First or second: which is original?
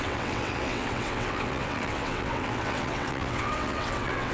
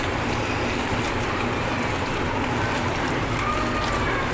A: second